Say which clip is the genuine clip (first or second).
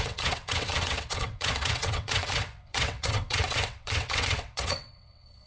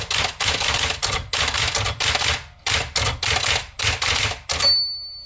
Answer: second